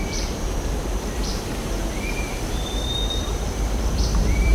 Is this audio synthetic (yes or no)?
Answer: yes